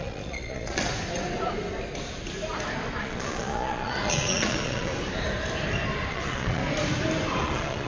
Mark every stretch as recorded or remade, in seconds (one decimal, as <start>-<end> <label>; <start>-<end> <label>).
0.0-0.8 remade; 0.8-3.0 recorded; 3.0-4.9 remade; 4.9-6.1 recorded; 6.1-6.6 remade; 6.6-7.4 recorded; 7.4-7.9 remade